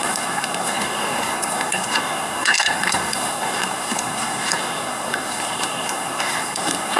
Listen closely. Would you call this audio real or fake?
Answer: fake